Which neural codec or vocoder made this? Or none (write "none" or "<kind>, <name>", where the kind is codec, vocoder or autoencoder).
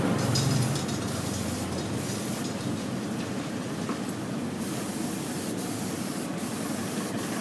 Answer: none